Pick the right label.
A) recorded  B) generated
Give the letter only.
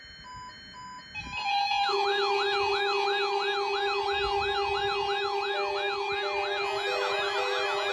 A